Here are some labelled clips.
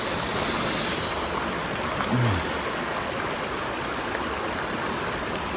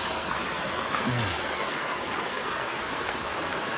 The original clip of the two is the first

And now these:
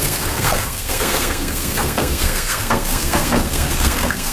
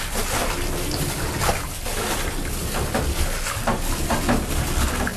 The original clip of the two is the second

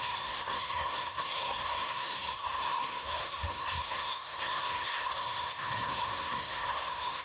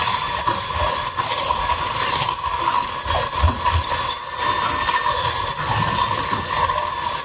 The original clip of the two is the second